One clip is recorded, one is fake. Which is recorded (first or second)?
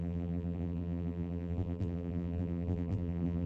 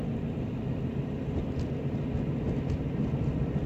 second